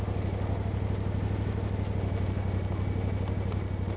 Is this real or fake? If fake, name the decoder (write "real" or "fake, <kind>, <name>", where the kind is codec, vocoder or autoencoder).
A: real